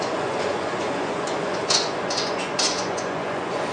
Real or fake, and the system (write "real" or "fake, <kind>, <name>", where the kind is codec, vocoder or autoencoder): fake, vocoder, Vocos